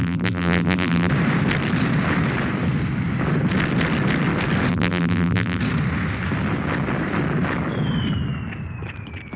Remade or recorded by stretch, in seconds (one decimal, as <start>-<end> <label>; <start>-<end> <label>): 0.0-1.1 remade; 1.1-4.7 recorded; 4.7-5.6 remade; 5.6-9.4 recorded